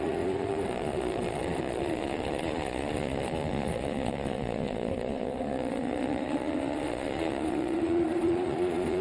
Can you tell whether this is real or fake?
fake